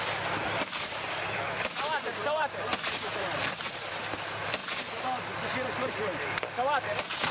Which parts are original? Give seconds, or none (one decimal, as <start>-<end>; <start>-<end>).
0.0-0.4; 3.4-7.3